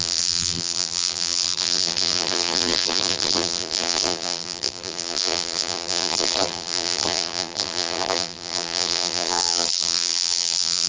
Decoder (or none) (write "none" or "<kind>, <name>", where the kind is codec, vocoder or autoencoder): vocoder, BigVGAN v2